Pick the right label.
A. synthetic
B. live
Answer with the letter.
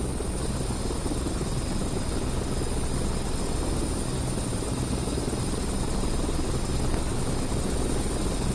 B